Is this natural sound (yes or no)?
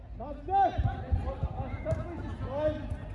yes